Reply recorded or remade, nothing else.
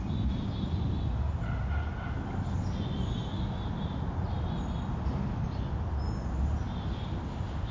recorded